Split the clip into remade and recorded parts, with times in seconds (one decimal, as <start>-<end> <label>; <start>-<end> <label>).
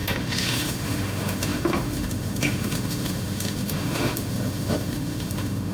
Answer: 0.0-5.7 remade